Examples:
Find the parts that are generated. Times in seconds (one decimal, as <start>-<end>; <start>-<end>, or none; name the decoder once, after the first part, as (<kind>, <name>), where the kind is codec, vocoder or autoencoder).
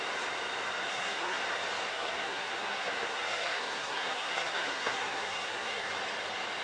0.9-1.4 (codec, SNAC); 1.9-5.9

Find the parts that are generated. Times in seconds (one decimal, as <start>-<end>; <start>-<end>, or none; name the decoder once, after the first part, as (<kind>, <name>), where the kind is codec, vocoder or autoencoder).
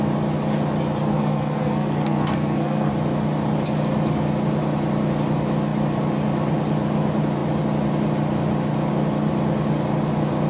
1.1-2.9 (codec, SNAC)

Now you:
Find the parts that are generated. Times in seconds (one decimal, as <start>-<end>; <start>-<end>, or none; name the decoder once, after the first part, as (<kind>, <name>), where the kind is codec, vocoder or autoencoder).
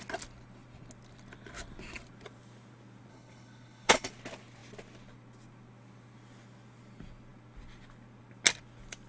3.1-4.1 (codec, HILCodec)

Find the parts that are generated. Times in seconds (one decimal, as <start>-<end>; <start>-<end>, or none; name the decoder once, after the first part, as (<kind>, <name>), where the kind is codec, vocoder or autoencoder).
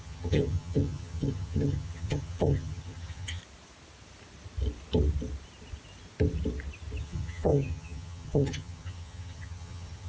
0.0-3.4 (vocoder, HiFi-GAN); 7.0-10.1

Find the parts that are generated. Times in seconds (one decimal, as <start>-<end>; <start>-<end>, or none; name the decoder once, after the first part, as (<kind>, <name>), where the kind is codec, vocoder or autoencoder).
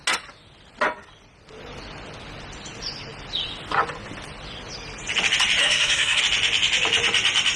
5.6-6.2 (codec, SNAC)